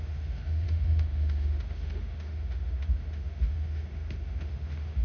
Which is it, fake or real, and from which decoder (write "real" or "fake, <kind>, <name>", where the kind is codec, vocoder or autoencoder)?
fake, autoencoder, DAC-VAE